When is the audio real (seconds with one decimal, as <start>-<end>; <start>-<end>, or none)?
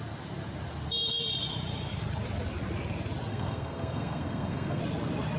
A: 0.0-3.3; 4.8-5.4